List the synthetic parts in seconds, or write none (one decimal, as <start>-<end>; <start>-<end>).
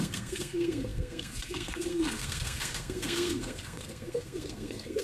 0.0-5.0